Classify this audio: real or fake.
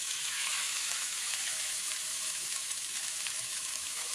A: fake